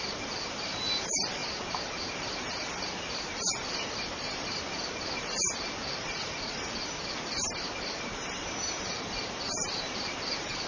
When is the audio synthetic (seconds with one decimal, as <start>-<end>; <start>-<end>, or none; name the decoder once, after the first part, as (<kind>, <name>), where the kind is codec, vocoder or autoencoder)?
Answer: 0.0-6.8 (vocoder, BigVGAN v2); 7.9-10.7